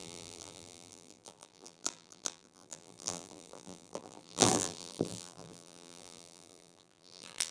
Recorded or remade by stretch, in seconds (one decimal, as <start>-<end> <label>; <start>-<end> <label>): 0.0-7.5 remade